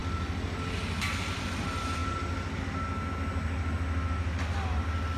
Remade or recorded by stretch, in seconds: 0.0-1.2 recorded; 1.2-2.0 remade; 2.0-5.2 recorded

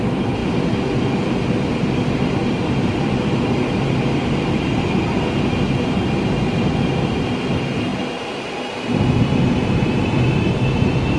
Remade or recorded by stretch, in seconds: 0.0-11.2 recorded